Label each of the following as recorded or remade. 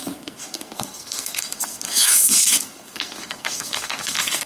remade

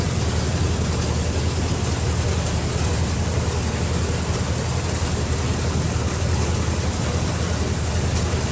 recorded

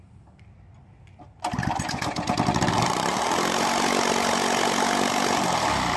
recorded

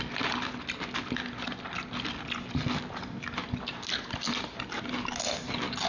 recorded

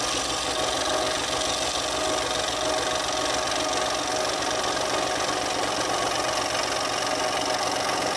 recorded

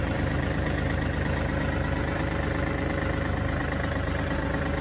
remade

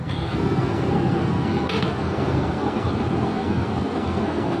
remade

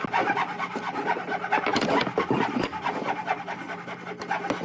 recorded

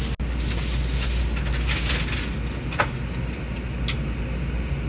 recorded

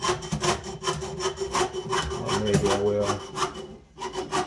recorded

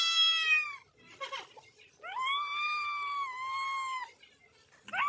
remade